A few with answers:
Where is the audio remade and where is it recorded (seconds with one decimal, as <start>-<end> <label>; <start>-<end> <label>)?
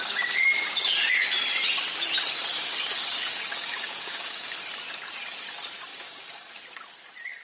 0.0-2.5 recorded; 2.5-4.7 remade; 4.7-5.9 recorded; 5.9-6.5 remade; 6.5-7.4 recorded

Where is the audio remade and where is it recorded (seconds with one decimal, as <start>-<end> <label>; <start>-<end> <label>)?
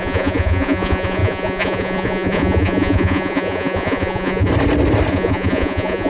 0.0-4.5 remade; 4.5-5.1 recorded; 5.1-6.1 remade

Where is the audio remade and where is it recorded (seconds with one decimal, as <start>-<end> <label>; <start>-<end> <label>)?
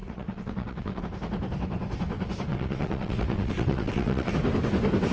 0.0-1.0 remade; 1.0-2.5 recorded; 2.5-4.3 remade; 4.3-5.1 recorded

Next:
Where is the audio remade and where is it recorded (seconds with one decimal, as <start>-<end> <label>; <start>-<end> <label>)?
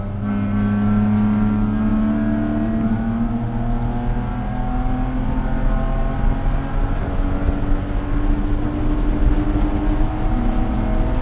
0.0-11.2 recorded